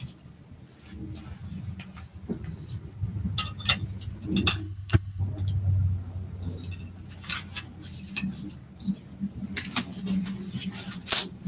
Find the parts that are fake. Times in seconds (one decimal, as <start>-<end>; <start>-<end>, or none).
4.5-5.2